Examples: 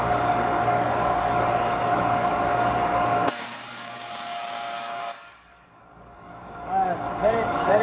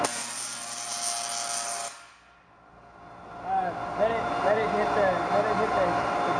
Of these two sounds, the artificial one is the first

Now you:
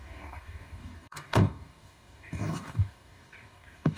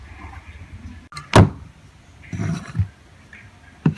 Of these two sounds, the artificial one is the first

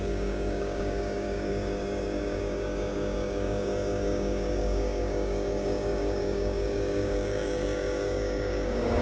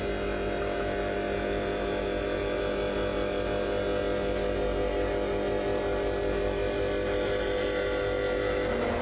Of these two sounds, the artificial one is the first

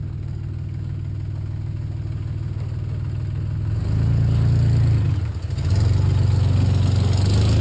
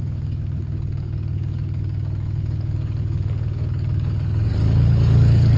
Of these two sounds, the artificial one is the second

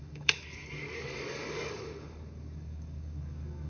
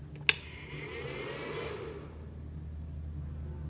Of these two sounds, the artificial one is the first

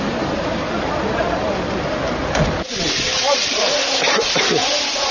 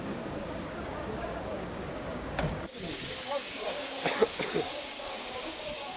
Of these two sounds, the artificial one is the second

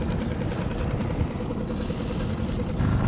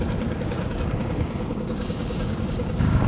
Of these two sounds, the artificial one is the second